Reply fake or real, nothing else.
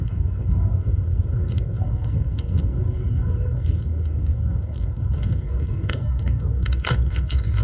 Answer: fake